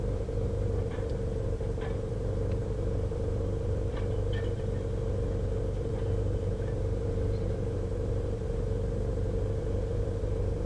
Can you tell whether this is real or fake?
fake